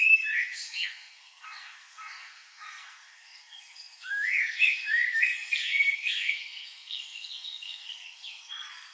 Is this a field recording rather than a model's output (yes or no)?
no